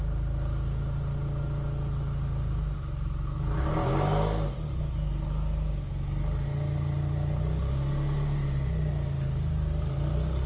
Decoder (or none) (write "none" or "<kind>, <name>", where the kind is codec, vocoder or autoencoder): none